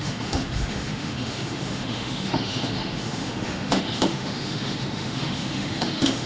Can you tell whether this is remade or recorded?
remade